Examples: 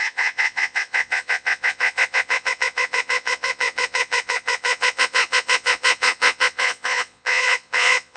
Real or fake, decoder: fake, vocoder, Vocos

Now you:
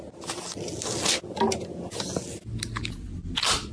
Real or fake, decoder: real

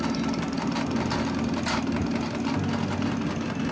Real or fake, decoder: real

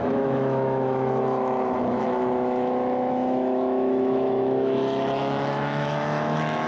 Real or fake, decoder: fake, autoencoder, DAC-VAE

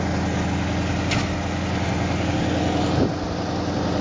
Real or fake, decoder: real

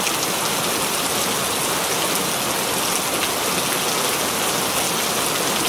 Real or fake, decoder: real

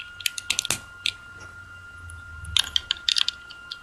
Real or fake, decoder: real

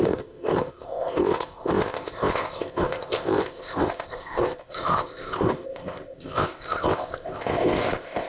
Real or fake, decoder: fake, codec, ZipCodec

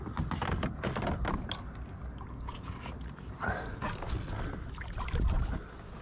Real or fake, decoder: real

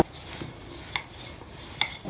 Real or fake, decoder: real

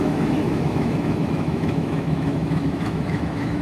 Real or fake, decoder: fake, autoencoder, DAC-VAE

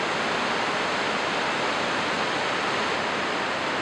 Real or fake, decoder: real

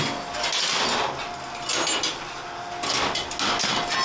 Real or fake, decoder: real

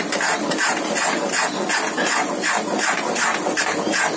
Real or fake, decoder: real